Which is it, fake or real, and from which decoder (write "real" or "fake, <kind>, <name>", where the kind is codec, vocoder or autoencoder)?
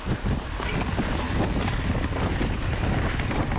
real